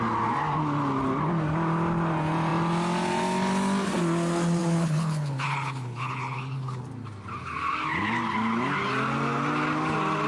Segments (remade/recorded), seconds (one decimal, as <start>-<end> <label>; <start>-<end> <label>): 0.0-4.6 recorded; 4.6-6.8 remade; 6.8-10.3 recorded